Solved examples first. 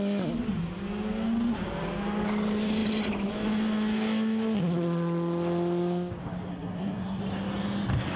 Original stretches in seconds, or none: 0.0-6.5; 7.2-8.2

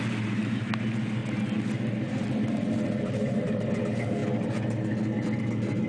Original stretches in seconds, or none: 0.0-5.9